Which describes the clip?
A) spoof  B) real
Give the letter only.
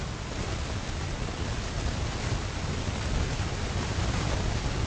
B